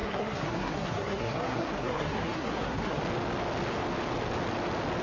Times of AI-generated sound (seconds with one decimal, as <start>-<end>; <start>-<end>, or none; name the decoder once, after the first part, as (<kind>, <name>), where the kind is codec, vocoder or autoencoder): 0.0-3.0 (codec, SNAC)